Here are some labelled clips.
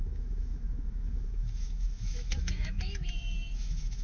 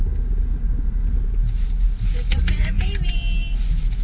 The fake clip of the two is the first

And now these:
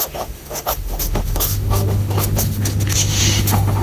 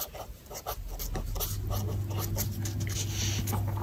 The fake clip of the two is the first